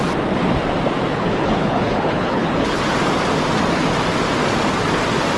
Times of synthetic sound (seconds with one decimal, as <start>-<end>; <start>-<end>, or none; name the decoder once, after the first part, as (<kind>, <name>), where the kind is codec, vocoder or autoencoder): 1.1-2.8 (codec, HILCodec)